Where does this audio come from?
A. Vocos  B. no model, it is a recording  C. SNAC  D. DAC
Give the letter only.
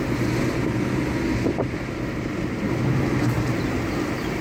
B